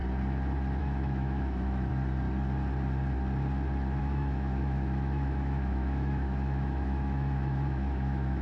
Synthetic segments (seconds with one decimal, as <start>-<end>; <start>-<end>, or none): 0.8-1.9; 4.0-8.4